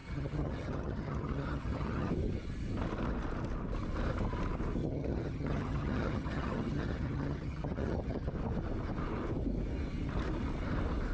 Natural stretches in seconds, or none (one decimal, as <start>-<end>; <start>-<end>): 2.1-4.8; 8.3-11.1